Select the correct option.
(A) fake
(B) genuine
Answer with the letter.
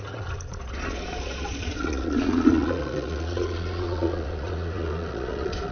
A